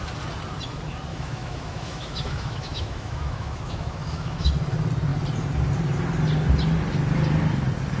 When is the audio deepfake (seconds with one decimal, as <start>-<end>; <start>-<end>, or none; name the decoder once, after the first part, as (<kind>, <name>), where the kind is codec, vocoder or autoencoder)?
1.1-4.5 (autoencoder, DAC-VAE)